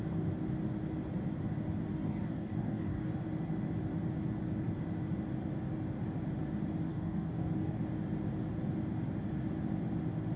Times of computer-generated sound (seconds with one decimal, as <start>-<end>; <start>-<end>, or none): 1.9-3.2; 6.9-7.8